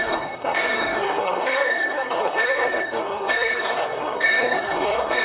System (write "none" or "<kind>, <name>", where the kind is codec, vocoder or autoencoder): codec, SNAC